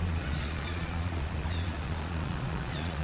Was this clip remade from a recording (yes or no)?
yes